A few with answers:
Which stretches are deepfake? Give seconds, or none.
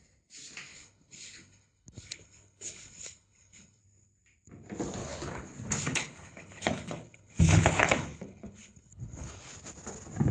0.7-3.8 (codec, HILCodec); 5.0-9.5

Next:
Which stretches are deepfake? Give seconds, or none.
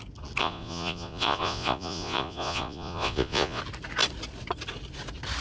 0.4-3.6 (vocoder, Vocos)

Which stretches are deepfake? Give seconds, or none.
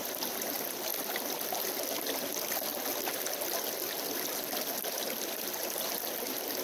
none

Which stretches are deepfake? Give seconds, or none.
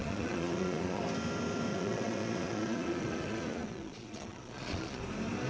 0.0-1.0 (vocoder, Vocos); 1.7-5.0